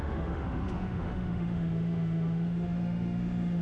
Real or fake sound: fake